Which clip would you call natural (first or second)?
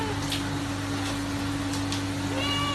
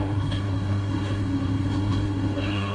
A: first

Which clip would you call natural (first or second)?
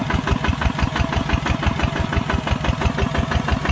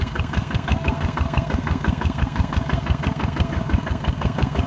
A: first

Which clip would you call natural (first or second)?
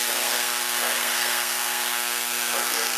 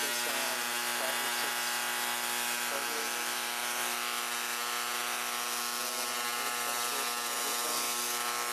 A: second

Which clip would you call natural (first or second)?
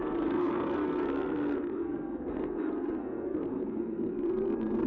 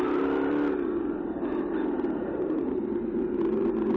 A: second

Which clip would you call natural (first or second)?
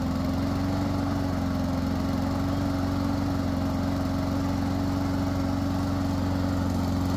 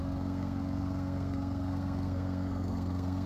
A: first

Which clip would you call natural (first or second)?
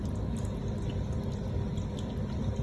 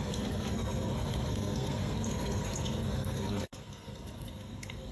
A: first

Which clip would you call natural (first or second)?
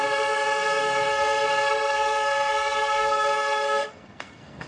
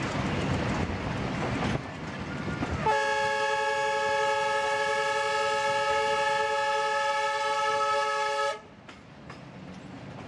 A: second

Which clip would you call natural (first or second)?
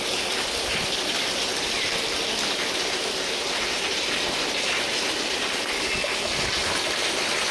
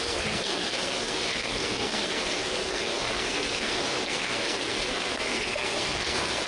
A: first